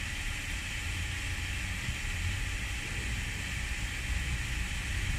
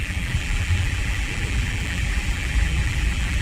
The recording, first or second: first